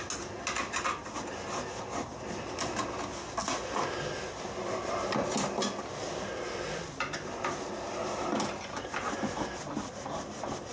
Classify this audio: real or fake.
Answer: real